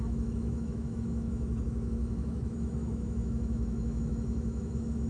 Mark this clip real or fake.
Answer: fake